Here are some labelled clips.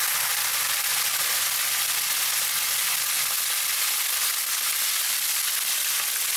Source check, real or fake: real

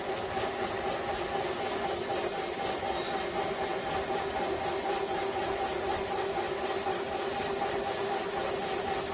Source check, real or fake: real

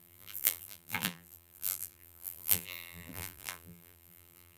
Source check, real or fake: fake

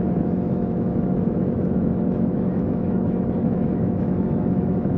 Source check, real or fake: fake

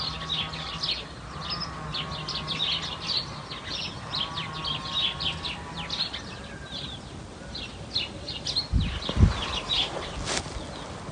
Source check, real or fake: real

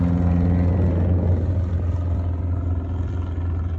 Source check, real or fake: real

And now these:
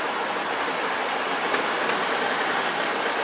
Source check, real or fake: real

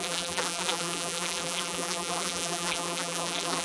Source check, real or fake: fake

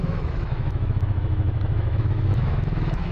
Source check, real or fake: fake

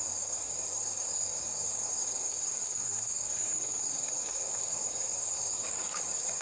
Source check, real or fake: fake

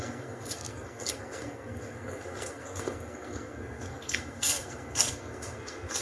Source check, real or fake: fake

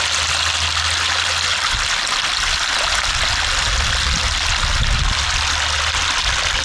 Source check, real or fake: real